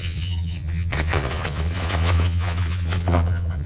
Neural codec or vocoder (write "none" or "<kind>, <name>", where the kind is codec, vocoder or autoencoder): vocoder, Vocos